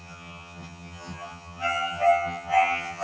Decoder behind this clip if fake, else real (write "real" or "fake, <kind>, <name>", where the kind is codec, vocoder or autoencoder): fake, vocoder, HiFi-GAN